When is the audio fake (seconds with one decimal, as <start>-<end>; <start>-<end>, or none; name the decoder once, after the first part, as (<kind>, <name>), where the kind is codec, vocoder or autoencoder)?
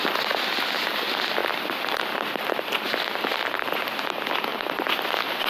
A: 1.4-3.4 (vocoder, BigVGAN v2); 4.5-5.1